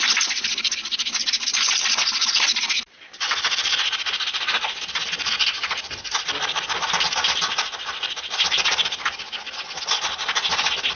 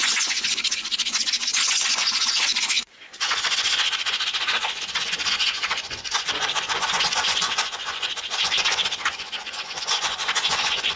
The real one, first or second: first